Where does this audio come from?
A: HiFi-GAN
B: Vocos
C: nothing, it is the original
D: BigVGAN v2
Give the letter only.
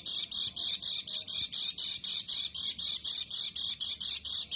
C